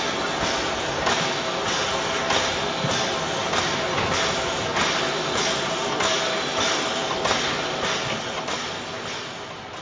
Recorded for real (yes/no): yes